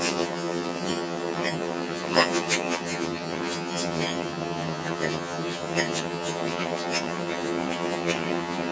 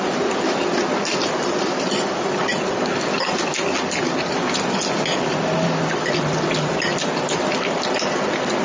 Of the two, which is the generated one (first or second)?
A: first